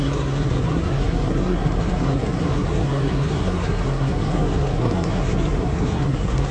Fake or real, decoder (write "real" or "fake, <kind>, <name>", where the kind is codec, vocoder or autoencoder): fake, codec, SNAC